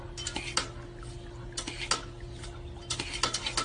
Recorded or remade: recorded